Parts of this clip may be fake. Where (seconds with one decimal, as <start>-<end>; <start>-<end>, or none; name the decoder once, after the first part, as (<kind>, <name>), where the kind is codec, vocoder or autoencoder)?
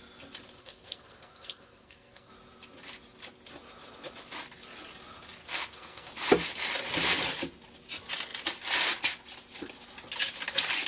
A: 0.6-2.3 (codec, SNAC); 5.4-6.1